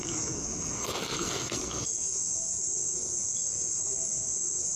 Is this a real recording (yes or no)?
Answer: no